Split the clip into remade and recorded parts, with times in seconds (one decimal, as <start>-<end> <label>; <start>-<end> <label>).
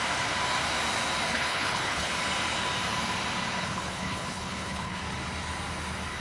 0.0-1.3 recorded; 1.3-2.1 remade; 2.1-3.6 recorded; 3.6-5.0 remade; 5.0-6.2 recorded